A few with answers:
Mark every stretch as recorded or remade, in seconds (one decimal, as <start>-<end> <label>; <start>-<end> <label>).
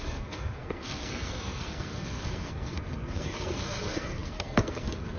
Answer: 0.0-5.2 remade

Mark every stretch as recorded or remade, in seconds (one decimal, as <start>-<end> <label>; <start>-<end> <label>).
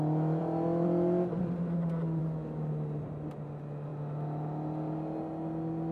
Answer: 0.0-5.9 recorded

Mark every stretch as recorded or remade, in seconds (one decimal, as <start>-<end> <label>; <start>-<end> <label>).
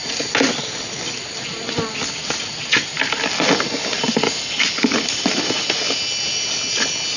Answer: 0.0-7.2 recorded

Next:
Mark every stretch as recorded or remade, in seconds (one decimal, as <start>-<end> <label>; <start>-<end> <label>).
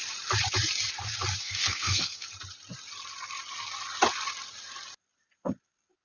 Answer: 0.0-1.4 recorded; 1.4-2.3 remade; 2.3-6.0 recorded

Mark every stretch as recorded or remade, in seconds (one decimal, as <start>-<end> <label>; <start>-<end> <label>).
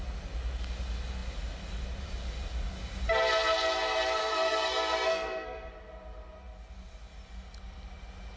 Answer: 0.0-4.2 recorded; 4.2-5.7 remade; 5.7-8.4 recorded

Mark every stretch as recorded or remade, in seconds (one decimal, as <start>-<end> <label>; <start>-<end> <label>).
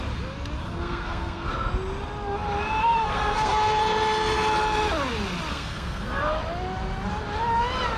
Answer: 0.0-0.6 recorded; 0.6-1.5 remade; 1.5-2.8 recorded; 2.8-3.8 remade; 3.8-5.5 recorded; 5.5-6.2 remade; 6.2-8.0 recorded